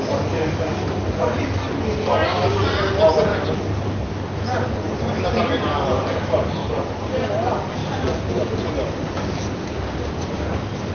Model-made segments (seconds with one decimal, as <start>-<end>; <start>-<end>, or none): none